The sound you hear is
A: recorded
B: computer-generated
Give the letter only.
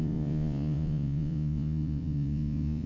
B